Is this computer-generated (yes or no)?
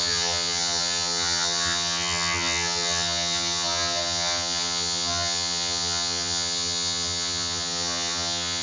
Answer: yes